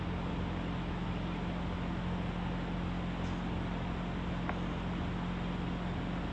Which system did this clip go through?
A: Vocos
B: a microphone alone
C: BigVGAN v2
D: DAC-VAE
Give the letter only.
B